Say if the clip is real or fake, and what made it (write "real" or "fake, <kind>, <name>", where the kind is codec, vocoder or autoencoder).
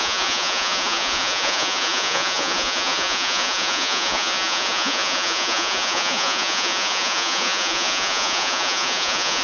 fake, vocoder, Vocos